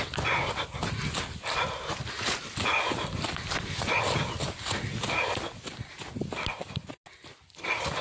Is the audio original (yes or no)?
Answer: yes